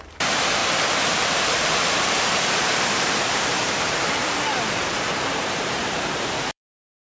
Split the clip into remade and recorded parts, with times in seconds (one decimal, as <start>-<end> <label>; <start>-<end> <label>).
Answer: 0.0-7.2 remade